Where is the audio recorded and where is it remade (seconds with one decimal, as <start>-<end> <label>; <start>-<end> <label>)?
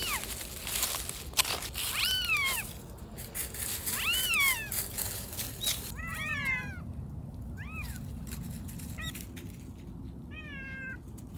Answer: 0.0-6.1 recorded; 6.1-6.9 remade; 6.9-11.4 recorded